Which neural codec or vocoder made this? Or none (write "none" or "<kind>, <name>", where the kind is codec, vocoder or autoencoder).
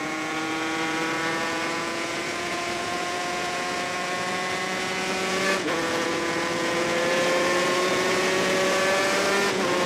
vocoder, Vocos